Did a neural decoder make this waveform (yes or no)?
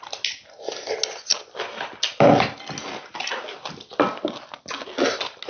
no